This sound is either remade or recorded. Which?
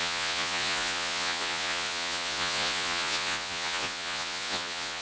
remade